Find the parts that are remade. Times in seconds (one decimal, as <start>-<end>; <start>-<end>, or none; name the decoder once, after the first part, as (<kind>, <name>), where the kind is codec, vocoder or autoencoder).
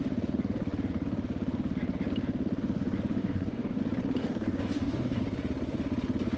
3.2-3.8 (codec, DAC); 4.2-5.2